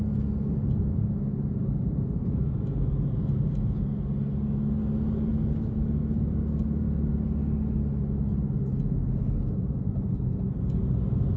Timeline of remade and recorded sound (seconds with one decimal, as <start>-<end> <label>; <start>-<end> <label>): 0.0-11.4 recorded